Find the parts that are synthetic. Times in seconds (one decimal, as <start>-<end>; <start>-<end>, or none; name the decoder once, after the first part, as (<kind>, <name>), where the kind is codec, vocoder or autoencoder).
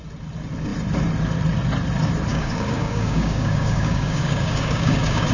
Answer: 2.3-5.3 (codec, DAC)